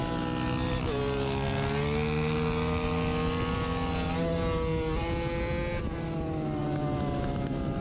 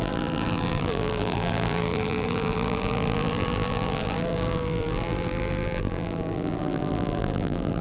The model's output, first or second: second